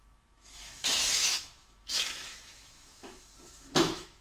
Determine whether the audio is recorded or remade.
remade